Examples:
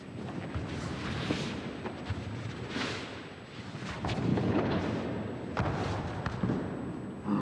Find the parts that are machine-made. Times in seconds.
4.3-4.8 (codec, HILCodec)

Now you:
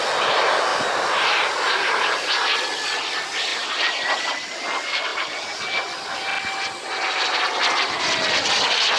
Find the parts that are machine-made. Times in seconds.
0.7-2.3 (vocoder, BigVGAN v2); 3.5-4.2; 5.1-5.6

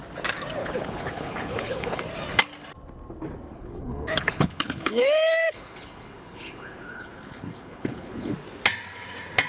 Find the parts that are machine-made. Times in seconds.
0.6-2.0 (codec, HILCodec); 3.5-8.3

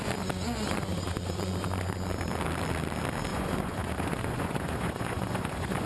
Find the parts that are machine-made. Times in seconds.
0.9-2.2 (vocoder, Vocos); 3.3-5.9